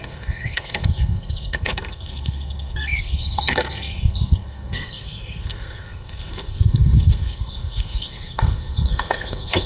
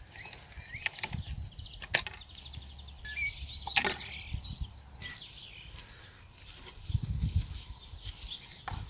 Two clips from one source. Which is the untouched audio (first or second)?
second